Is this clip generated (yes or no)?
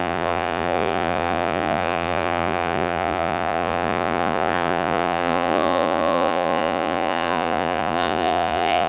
yes